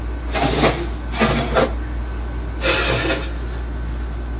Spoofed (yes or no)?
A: no